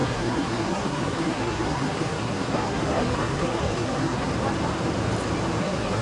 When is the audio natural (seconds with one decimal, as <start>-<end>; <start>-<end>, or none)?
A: 4.3-5.6